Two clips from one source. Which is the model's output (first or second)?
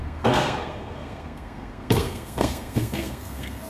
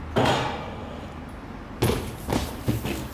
first